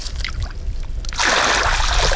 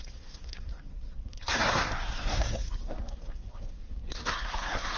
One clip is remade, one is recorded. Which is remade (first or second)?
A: second